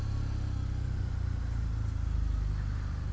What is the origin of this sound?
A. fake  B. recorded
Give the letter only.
B